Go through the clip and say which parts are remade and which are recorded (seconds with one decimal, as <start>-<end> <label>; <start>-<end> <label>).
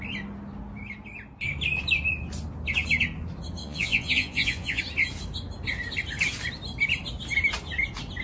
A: 0.0-3.6 recorded; 3.6-4.8 remade; 4.8-8.2 recorded